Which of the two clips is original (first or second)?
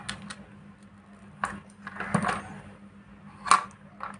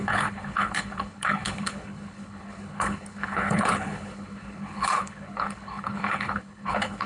first